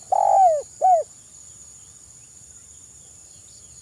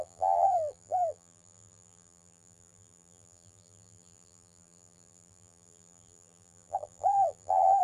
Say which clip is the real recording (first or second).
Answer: first